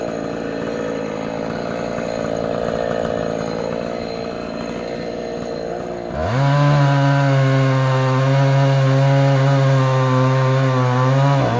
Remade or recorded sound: recorded